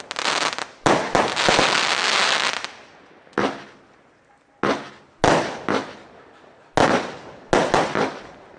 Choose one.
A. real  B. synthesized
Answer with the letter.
A